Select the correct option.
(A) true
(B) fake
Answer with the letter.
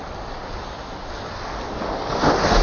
A